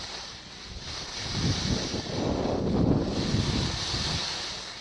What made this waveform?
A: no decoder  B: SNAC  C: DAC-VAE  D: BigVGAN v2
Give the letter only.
A